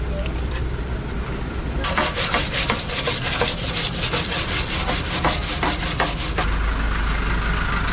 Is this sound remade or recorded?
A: recorded